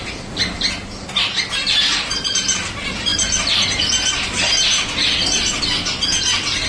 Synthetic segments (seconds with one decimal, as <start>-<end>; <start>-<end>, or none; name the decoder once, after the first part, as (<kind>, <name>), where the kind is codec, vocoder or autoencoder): none